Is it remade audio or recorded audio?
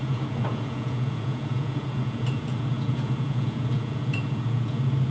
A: remade